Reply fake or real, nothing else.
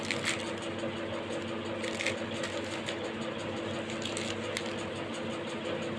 real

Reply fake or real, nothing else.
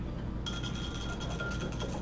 real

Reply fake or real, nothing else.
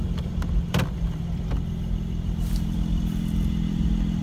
fake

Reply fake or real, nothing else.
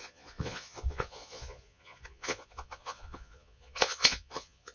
fake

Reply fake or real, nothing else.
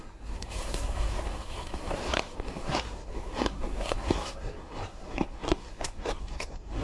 fake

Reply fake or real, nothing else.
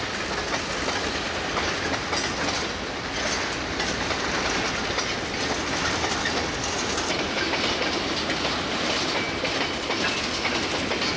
real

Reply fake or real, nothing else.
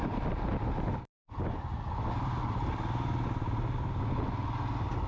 real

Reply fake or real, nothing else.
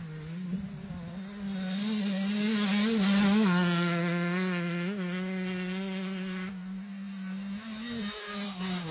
real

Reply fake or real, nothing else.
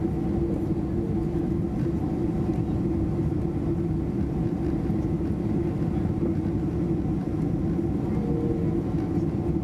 real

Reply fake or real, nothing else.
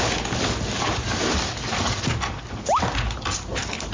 real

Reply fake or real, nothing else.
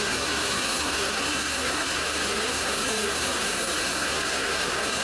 fake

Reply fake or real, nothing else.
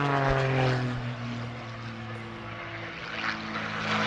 real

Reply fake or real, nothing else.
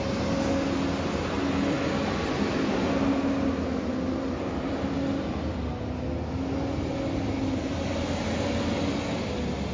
real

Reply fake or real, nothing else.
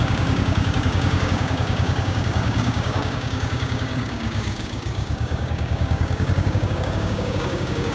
fake